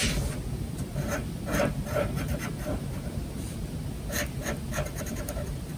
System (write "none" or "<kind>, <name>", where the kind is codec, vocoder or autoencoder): vocoder, BigVGAN v2